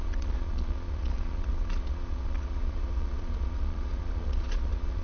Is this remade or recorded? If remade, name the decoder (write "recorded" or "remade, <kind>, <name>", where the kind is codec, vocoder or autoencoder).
remade, vocoder, Vocos